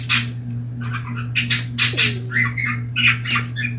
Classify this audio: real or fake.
real